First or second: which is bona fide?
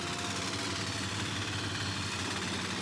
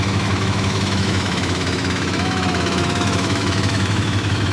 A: first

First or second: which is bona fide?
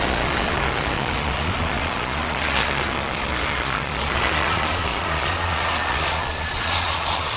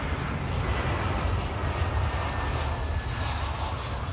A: second